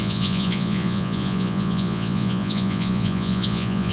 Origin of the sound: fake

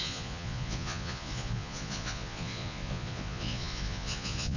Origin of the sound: fake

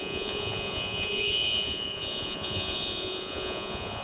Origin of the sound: fake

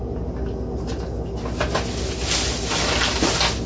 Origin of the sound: real